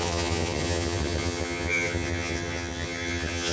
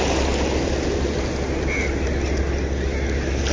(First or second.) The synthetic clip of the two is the first